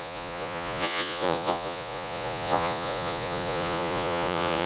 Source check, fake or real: fake